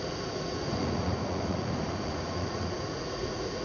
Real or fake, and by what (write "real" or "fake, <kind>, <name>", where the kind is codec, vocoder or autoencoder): fake, vocoder, Vocos